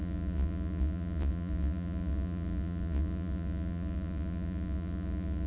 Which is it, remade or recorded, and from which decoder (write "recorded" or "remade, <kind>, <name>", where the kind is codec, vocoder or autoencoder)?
remade, vocoder, Vocos